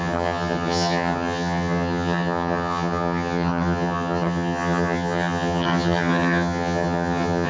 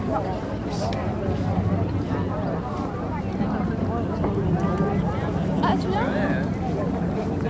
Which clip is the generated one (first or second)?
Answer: first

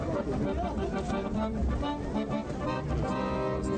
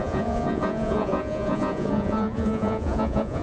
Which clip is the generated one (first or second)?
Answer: second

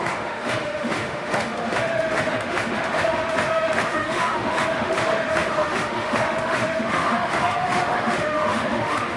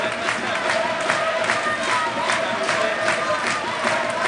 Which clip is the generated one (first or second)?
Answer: first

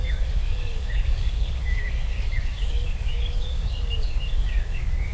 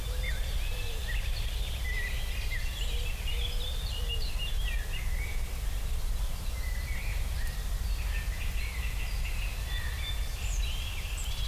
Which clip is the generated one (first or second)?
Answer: first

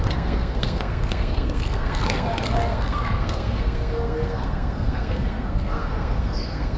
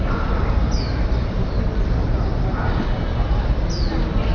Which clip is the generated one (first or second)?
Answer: first